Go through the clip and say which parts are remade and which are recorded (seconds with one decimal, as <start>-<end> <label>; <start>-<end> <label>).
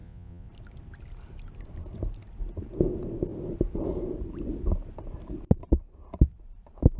0.0-0.5 remade; 0.5-7.0 recorded